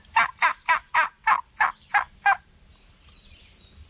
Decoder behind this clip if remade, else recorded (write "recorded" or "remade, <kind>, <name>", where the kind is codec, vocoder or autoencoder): recorded